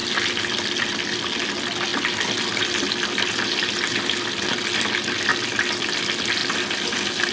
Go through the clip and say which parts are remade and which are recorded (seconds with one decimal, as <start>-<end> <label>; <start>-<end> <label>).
0.0-7.3 recorded